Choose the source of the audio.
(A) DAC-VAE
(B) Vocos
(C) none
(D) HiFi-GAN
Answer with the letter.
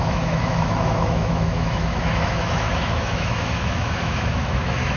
A